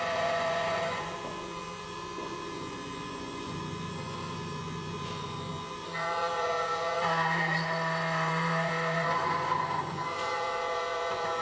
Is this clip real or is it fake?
fake